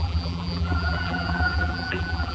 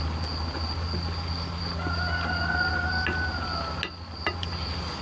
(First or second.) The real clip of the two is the second